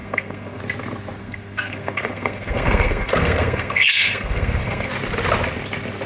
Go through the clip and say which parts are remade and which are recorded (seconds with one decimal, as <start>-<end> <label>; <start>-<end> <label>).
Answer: 0.0-0.6 remade; 0.6-1.2 recorded; 1.2-4.9 remade; 4.9-6.1 recorded